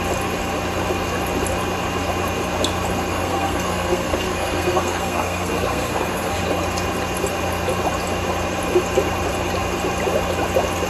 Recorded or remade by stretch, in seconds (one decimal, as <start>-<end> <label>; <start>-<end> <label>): 0.0-3.1 recorded; 3.1-6.4 remade; 6.4-10.9 recorded